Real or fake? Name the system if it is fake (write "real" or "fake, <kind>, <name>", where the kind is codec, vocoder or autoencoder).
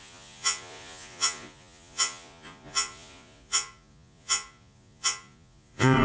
fake, vocoder, Vocos